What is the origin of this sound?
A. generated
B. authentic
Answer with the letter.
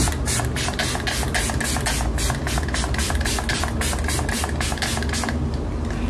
B